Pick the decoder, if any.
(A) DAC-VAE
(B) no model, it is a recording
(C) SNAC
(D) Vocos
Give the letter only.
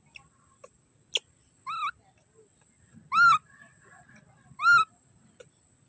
B